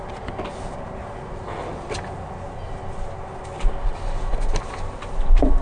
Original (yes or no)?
yes